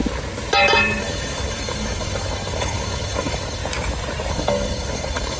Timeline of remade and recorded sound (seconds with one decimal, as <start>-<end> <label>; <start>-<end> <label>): 0.0-1.0 recorded; 1.0-3.6 remade; 3.6-4.3 recorded; 4.3-5.4 remade